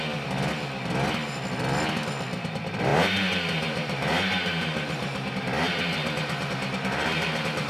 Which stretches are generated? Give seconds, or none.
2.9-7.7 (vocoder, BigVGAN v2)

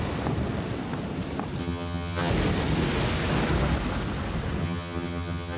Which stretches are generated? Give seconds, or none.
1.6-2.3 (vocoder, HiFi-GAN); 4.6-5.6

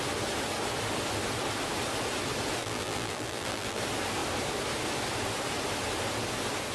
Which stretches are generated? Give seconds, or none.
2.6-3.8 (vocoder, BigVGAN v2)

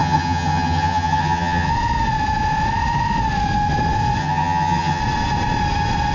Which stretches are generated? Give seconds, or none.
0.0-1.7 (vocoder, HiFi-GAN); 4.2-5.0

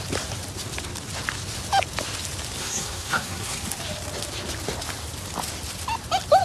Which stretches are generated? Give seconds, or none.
2.6-3.6 (codec, SNAC)

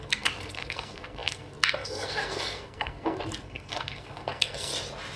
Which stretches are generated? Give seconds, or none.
0.0-4.7 (codec, SNAC)